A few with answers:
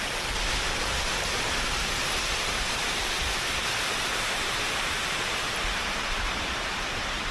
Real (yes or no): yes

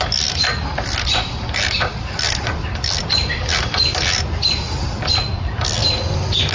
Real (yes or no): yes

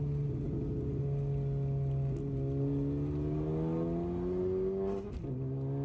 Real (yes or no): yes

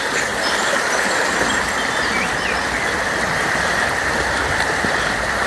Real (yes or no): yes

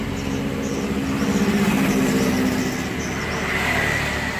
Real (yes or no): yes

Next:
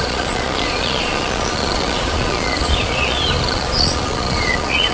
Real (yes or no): no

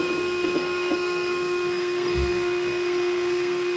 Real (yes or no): no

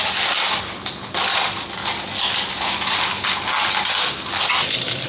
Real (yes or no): yes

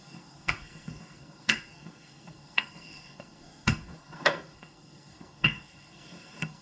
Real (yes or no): no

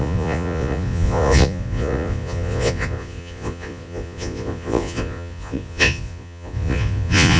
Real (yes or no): no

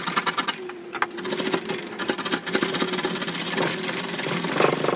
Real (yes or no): yes